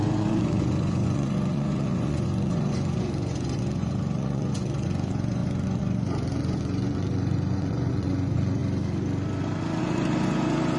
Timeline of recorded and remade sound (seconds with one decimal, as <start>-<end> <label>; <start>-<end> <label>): 0.0-8.6 remade; 8.6-9.8 recorded; 9.8-10.8 remade